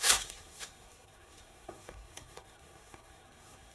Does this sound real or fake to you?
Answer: fake